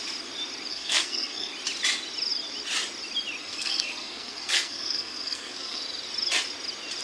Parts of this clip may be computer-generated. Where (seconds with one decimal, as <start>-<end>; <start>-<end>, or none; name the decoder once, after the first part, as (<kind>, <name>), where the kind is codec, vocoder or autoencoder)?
0.7-1.5 (codec, SNAC); 3.4-5.8